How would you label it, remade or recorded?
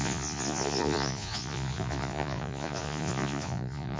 remade